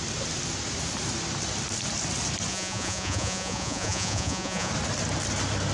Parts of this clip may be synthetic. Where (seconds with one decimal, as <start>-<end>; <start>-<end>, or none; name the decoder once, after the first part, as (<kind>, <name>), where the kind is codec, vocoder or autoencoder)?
2.5-4.7 (vocoder, Vocos)